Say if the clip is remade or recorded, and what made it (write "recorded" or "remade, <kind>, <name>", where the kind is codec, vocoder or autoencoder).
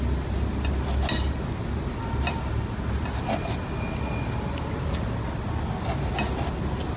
recorded